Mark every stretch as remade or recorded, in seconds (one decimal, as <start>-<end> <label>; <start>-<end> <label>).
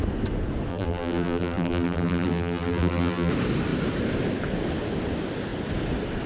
0.0-0.7 recorded; 0.7-3.3 remade; 3.3-6.3 recorded